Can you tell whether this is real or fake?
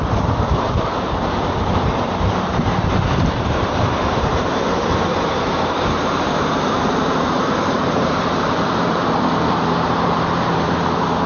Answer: fake